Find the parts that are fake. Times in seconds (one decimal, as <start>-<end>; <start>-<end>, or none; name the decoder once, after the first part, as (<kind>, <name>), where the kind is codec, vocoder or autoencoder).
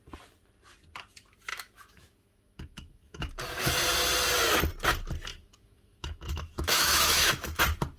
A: 1.5-3.3 (autoencoder, DAC-VAE); 5.3-7.6